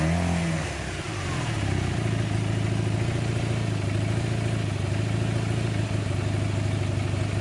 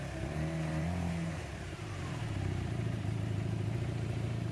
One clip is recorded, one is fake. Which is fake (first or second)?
second